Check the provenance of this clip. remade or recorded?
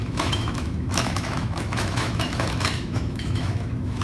remade